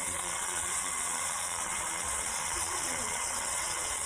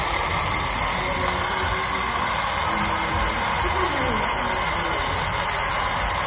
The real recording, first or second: second